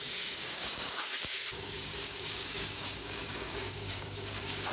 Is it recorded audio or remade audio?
remade